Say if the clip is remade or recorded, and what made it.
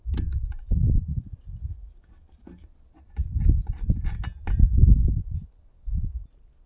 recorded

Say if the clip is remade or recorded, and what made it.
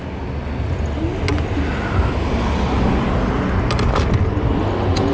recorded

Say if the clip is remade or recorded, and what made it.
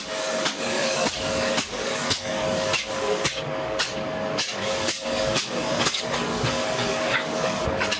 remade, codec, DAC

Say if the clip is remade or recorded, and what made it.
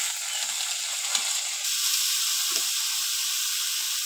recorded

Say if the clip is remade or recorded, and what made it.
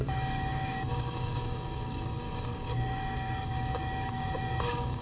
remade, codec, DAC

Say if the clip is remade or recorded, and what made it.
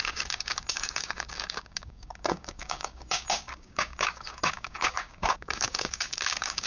remade, codec, DAC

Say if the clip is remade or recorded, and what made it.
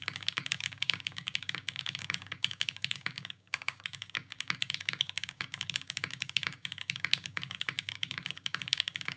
remade, codec, DAC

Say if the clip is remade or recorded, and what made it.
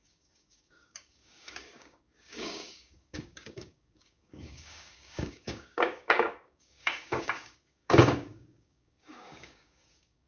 remade, codec, DAC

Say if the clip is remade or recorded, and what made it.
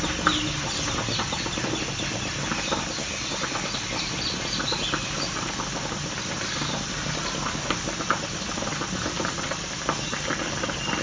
recorded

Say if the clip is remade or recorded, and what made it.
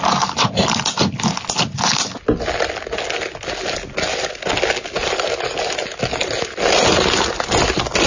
recorded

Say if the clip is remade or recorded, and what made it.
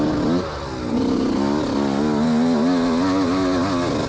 recorded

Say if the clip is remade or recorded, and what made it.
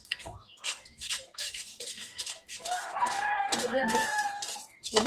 remade, codec, DAC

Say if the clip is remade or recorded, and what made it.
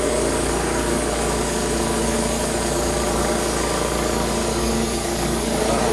remade, codec, DAC